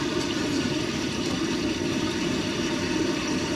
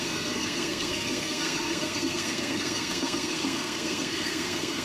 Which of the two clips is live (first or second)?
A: first